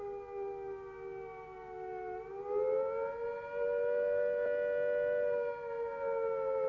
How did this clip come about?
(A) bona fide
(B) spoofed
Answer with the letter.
A